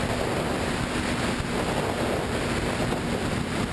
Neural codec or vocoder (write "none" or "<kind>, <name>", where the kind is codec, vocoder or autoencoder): none